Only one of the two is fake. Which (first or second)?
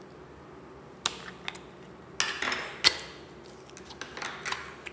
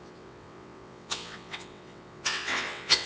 second